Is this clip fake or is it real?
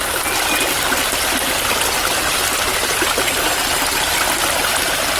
real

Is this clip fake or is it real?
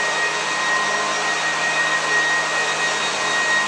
real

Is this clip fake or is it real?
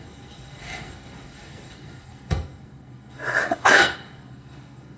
fake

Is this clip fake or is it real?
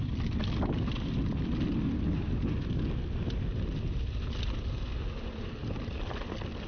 real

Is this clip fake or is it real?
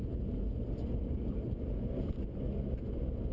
real